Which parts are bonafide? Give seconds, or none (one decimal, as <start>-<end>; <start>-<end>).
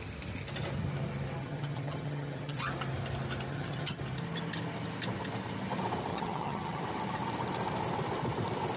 0.0-1.4; 2.6-3.5; 4.0-6.1; 6.8-8.8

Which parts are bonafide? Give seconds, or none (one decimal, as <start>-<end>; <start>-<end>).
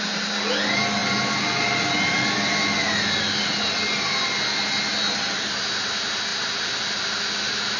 0.0-7.8